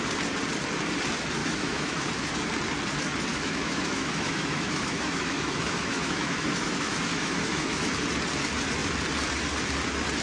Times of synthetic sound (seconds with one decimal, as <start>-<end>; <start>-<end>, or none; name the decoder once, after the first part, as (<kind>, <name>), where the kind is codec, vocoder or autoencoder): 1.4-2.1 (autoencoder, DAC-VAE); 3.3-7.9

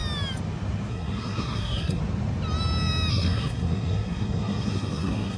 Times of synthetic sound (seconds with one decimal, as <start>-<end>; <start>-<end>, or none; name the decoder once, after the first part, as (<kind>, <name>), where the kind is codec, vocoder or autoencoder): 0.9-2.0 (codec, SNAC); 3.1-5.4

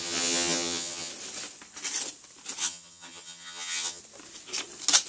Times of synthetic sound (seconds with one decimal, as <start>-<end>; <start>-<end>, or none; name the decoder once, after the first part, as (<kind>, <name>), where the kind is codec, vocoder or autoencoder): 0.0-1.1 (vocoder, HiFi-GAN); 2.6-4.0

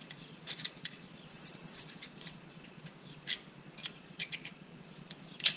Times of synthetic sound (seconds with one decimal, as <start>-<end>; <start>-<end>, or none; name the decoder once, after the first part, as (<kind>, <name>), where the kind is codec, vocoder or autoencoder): 0.0-2.8 (vocoder, Vocos); 3.8-4.8

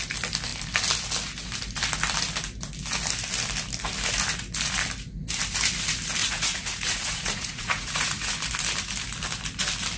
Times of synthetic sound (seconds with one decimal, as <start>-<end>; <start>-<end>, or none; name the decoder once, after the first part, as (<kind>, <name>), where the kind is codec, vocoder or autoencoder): 6.2-8.3 (vocoder, Vocos)